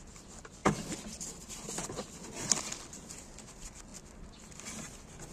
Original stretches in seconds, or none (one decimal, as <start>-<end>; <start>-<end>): 0.0-5.3